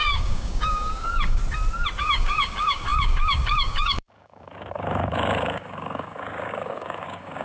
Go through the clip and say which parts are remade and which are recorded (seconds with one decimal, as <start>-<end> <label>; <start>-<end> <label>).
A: 0.0-1.4 remade; 1.4-2.0 recorded; 2.0-7.4 remade